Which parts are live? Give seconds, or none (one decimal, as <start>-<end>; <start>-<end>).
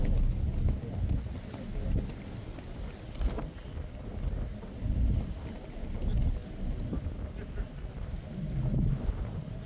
0.0-9.7